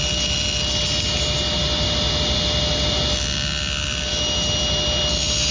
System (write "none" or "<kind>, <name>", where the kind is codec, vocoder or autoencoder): none